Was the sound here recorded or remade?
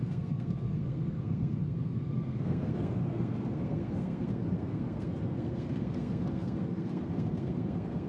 remade